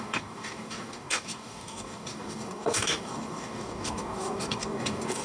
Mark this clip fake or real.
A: fake